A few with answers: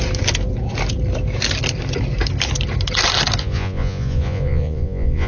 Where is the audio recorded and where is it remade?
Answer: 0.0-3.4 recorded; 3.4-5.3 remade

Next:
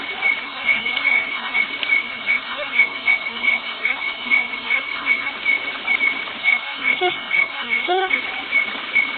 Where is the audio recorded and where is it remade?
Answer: 0.0-0.4 recorded; 0.4-1.6 remade; 1.6-2.0 recorded; 2.0-5.3 remade; 5.3-6.4 recorded; 6.4-8.2 remade; 8.2-9.2 recorded

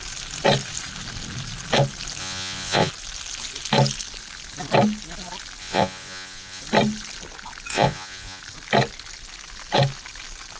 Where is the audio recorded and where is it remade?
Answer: 0.0-2.2 recorded; 2.2-2.9 remade; 2.9-5.6 recorded; 5.6-6.6 remade; 6.6-7.7 recorded; 7.7-8.4 remade; 8.4-10.6 recorded

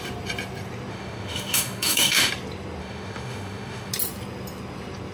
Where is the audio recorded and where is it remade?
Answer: 0.0-0.9 recorded; 0.9-2.3 remade; 2.3-2.8 recorded; 2.8-3.9 remade; 3.9-5.1 recorded

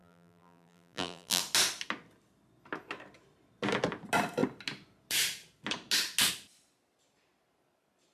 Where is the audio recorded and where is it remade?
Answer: 0.0-1.4 remade; 1.4-8.1 recorded

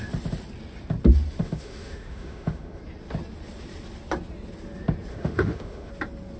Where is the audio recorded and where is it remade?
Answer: 0.0-1.4 recorded; 1.4-2.8 remade; 2.8-5.1 recorded; 5.1-5.9 remade; 5.9-6.4 recorded